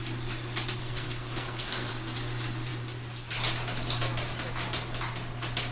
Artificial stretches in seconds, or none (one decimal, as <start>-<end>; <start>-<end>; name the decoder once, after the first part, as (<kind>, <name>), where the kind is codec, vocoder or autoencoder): 0.8-1.9 (codec, SNAC)